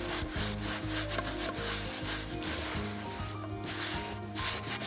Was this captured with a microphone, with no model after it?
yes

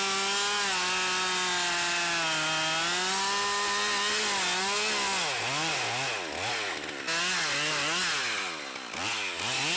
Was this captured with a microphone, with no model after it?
yes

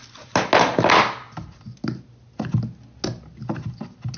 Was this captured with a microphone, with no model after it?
yes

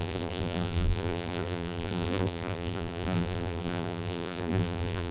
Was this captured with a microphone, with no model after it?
no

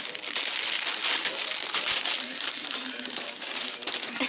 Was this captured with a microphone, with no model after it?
no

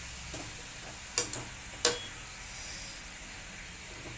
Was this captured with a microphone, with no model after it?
yes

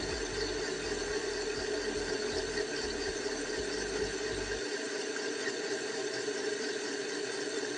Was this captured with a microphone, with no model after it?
yes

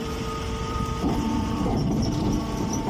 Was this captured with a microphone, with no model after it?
no